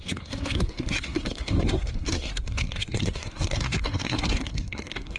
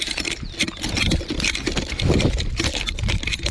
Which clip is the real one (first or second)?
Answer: second